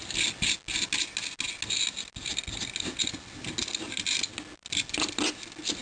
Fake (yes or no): no